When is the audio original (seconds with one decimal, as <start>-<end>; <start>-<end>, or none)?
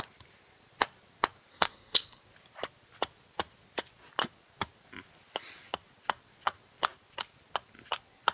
0.0-1.5; 2.2-8.3